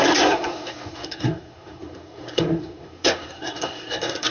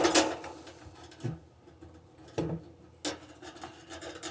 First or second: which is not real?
first